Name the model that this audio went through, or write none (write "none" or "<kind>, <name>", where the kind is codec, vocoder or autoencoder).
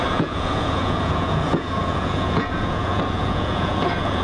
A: vocoder, Vocos